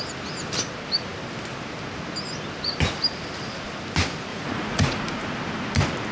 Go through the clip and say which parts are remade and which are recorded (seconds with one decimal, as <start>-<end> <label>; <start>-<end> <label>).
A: 0.0-4.3 recorded; 4.3-5.0 remade; 5.0-6.1 recorded